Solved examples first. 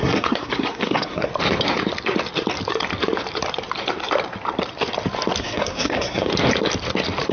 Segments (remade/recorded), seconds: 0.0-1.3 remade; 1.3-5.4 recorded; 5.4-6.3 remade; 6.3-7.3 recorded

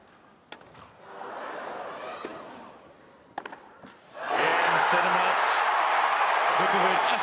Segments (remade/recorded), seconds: 0.0-0.7 recorded; 0.7-1.3 remade; 1.3-7.2 recorded

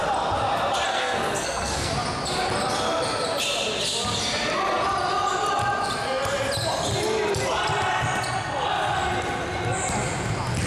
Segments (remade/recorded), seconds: 0.0-0.9 recorded; 0.9-1.9 remade; 1.9-10.7 recorded

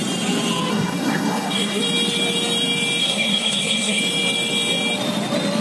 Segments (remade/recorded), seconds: 0.0-0.7 recorded; 0.7-1.8 remade; 1.8-3.0 recorded; 3.0-4.0 remade; 4.0-5.6 recorded

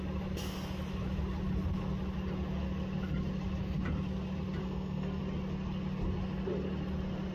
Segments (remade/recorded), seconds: 0.0-4.6 recorded; 4.6-5.2 remade; 5.2-7.3 recorded

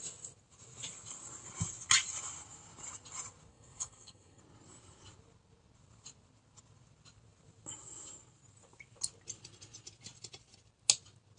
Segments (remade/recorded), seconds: 0.0-3.5 recorded; 3.5-4.4 remade; 4.4-11.4 recorded

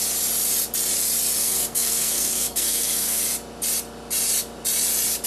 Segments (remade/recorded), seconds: 0.0-1.4 recorded; 1.4-3.2 remade; 3.2-5.3 recorded